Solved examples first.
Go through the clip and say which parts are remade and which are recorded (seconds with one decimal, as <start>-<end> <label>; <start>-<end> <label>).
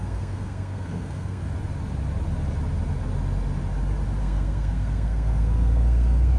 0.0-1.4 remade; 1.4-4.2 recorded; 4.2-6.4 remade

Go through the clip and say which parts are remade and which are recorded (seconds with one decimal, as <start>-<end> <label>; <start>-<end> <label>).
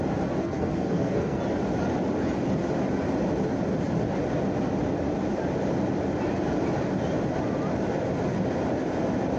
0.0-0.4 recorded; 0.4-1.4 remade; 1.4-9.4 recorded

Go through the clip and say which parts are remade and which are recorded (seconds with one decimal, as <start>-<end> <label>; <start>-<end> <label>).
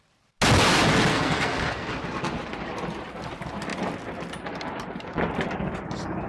0.0-1.1 recorded; 1.1-1.9 remade; 1.9-6.3 recorded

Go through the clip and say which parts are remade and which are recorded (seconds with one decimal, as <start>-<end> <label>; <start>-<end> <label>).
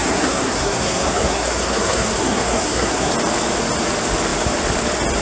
0.0-3.1 remade; 3.1-5.2 recorded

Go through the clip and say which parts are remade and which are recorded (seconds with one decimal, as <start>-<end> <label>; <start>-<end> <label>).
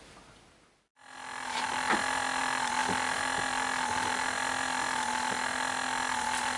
0.0-6.6 recorded